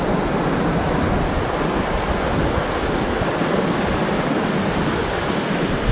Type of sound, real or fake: real